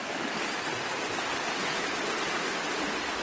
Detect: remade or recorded recorded